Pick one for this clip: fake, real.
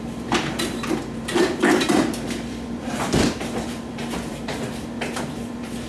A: fake